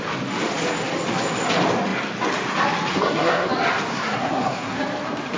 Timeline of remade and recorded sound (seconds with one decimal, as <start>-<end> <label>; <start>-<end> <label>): 0.0-2.9 recorded; 2.9-3.5 remade; 3.5-3.9 recorded; 3.9-4.8 remade; 4.8-5.4 recorded